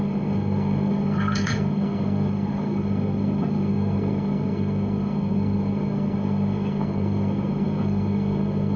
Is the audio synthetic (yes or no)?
yes